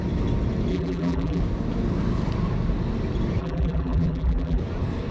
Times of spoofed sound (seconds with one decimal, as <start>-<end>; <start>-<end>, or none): 0.7-1.4; 3.4-4.6